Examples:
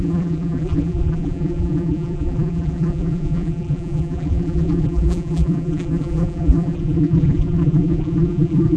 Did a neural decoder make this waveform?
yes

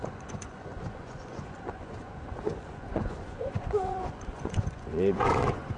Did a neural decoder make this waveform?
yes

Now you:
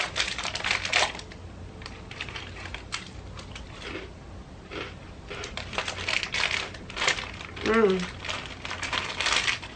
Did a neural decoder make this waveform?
yes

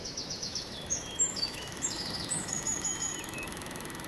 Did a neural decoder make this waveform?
yes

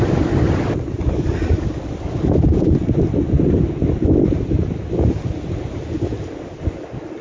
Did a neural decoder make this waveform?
no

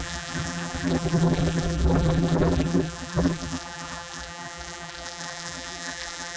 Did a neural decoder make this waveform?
yes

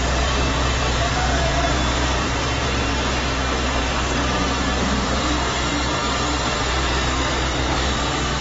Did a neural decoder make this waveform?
yes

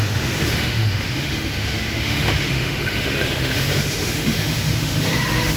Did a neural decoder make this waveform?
yes